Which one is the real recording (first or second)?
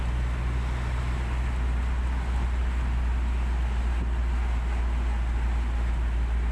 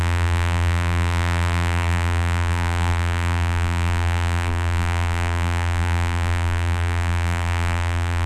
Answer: first